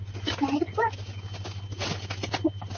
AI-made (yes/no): no